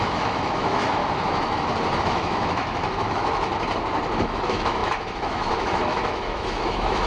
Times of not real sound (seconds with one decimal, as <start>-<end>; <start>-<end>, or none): 0.0-1.0; 2.0-3.5; 4.2-7.1